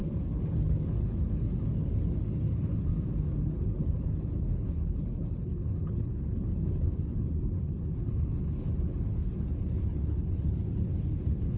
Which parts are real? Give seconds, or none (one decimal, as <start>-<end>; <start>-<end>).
2.9-3.4